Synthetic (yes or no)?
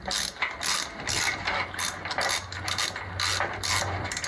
no